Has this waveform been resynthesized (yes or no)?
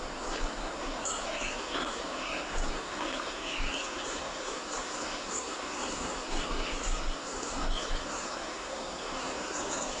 yes